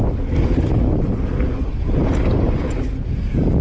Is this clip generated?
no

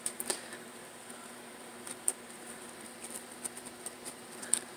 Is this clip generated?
yes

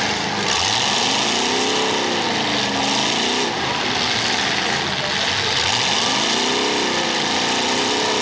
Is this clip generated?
no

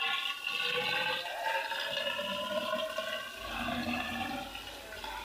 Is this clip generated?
no